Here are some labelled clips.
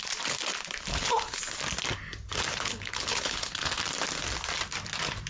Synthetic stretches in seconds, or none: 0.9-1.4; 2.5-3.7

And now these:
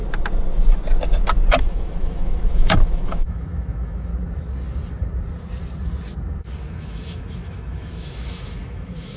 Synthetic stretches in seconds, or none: 1.6-4.1; 6.7-9.2

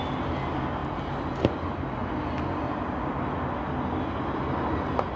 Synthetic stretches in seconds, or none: none